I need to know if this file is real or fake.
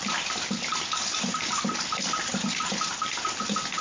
real